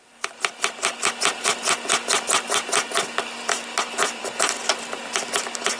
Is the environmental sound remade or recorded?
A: recorded